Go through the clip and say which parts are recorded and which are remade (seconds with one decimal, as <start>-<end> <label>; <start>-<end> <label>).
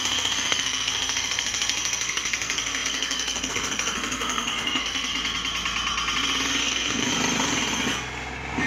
0.0-5.1 remade; 5.1-6.6 recorded; 6.6-7.1 remade; 7.1-8.7 recorded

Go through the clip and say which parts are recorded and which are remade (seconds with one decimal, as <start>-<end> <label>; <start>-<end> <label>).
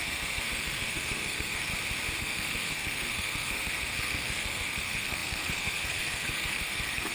0.0-1.7 remade; 1.7-2.2 recorded; 2.2-7.1 remade